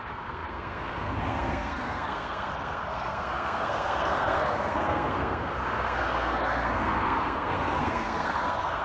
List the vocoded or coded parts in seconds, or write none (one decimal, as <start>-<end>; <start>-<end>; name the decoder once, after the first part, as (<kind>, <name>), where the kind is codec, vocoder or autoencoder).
0.0-8.8 (codec, SNAC)